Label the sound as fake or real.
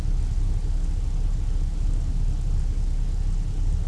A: real